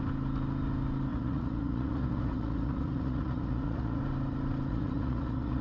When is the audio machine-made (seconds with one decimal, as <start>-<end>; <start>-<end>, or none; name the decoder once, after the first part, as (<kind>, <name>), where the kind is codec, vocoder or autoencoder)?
1.1-4.0 (vocoder, Vocos); 4.7-5.6